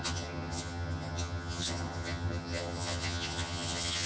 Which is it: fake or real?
fake